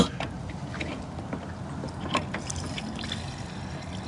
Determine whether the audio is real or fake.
real